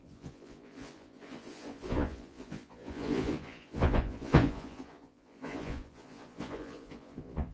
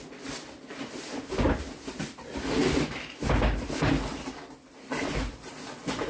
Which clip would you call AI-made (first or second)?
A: first